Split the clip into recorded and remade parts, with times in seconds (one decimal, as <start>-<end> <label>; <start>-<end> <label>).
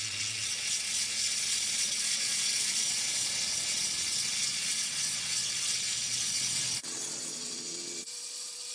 0.0-8.7 remade